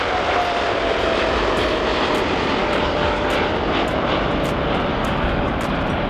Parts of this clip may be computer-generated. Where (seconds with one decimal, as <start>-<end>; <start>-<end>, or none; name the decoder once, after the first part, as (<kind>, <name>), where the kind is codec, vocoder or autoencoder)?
2.6-3.3 (codec, DAC); 4.9-5.5